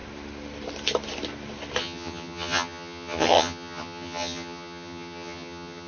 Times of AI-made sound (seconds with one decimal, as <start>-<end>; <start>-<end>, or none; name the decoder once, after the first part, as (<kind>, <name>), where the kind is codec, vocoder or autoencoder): 1.8-5.9 (vocoder, HiFi-GAN)